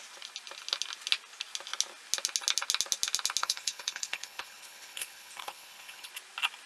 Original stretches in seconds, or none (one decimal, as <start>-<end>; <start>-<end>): 0.0-3.4; 6.1-6.7